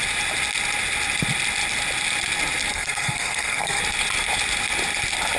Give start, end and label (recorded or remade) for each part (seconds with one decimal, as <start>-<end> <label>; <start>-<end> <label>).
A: 0.0-2.7 recorded; 2.7-3.8 remade; 3.8-5.4 recorded